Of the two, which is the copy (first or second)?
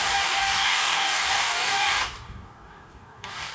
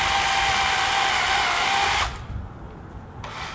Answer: first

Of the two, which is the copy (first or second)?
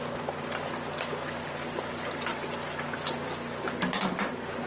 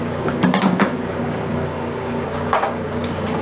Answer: second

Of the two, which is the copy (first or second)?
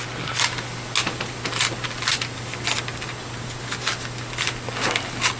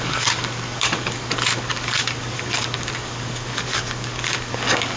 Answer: second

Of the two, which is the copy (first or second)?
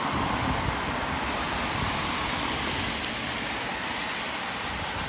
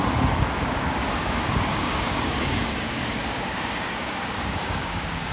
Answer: second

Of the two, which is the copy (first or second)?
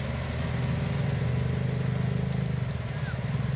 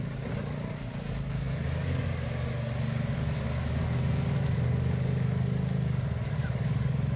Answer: second